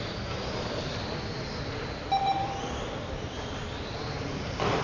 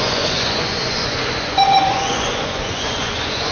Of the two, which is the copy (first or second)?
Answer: second